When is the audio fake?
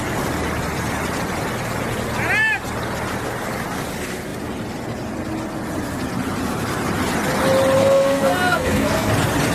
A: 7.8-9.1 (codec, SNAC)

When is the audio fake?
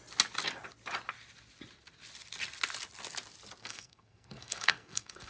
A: 3.6-5.3 (codec, SNAC)